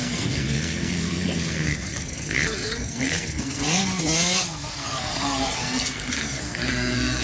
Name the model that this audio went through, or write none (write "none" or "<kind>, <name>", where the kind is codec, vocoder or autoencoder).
codec, SNAC